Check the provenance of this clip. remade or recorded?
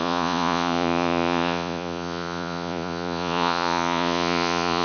remade